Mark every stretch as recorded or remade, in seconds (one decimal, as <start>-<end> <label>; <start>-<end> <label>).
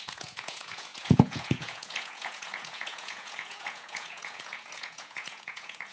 0.0-5.9 remade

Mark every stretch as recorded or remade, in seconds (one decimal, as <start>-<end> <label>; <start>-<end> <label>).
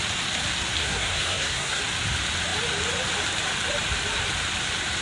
0.0-0.8 recorded; 0.8-1.8 remade; 1.8-5.0 recorded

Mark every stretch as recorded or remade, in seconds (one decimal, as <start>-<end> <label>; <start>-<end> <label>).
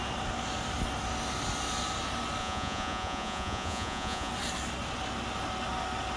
0.0-2.4 recorded; 2.4-4.3 remade; 4.3-6.2 recorded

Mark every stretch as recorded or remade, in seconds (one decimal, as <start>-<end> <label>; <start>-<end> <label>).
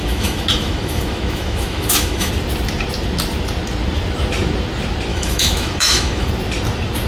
0.0-2.3 remade; 2.3-5.1 recorded; 5.1-6.3 remade; 6.3-7.1 recorded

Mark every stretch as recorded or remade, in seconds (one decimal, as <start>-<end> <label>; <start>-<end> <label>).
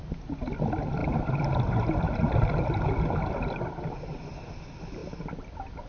0.0-5.9 recorded